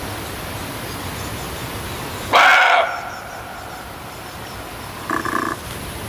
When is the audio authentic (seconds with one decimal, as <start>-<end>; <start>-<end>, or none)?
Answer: 0.0-6.1